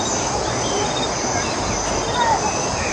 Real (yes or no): yes